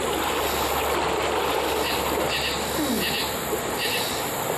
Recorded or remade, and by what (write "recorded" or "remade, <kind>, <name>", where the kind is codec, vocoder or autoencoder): recorded